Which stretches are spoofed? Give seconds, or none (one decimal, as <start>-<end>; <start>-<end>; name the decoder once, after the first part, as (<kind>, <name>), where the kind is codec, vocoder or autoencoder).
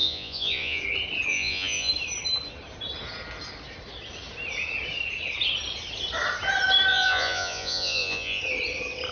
0.0-0.8 (vocoder, Vocos); 1.3-1.9; 6.9-8.4